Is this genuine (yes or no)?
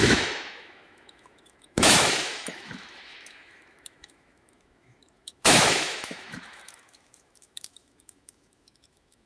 no